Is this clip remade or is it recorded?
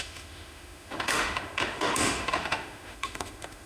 remade